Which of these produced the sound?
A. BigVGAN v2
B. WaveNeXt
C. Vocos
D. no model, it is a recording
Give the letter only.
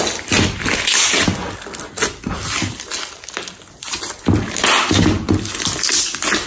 D